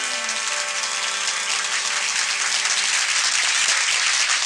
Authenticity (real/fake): real